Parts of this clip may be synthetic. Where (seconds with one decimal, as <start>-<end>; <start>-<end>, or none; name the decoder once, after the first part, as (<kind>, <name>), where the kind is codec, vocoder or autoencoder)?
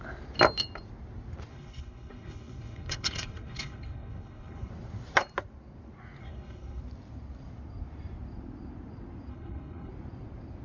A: 1.5-4.7 (codec, HILCodec); 6.2-6.8; 9.3-9.9